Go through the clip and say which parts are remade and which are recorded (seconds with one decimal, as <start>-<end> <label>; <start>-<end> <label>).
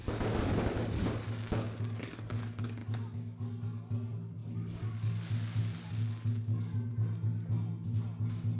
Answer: 0.0-6.9 remade; 6.9-8.6 recorded